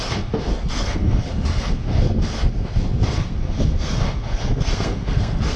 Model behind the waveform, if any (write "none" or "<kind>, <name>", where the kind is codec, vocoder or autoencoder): codec, SNAC